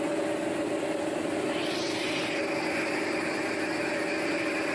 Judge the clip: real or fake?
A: real